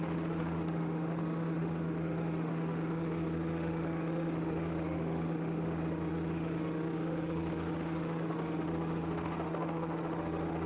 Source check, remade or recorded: remade